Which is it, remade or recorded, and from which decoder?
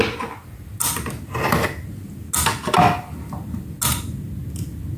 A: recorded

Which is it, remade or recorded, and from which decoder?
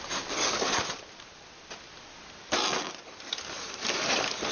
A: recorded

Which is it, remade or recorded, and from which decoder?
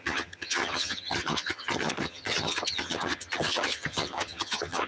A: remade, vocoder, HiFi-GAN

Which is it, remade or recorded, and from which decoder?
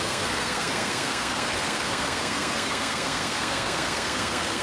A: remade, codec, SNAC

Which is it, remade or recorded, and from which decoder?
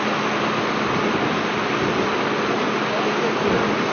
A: recorded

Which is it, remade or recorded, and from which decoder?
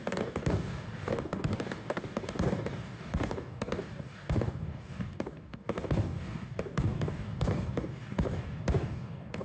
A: remade, codec, DAC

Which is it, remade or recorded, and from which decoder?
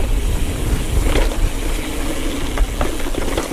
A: recorded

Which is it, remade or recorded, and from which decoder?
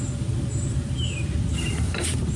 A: remade, vocoder, BigVGAN v2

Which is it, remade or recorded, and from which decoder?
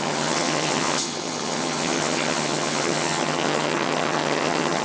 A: remade, vocoder, HiFi-GAN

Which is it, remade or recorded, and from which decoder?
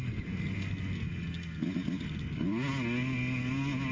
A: recorded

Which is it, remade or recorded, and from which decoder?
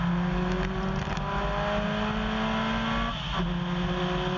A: recorded